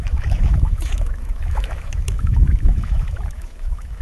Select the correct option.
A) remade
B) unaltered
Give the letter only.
A